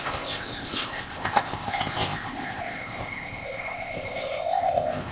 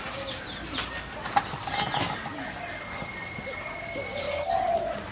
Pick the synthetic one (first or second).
first